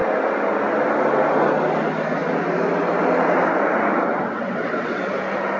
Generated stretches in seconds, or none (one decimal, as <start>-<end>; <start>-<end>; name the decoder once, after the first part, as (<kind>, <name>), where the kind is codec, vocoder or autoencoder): 4.1-5.1 (vocoder, WaveNeXt)